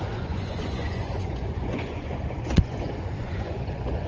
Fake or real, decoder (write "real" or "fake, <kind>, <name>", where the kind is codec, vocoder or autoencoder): fake, vocoder, Vocos